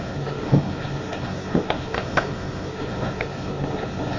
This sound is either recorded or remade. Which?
remade